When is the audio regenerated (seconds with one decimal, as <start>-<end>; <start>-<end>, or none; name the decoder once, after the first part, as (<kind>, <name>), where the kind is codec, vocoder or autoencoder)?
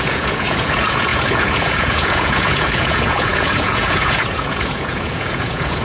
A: 0.0-5.8 (vocoder, Vocos)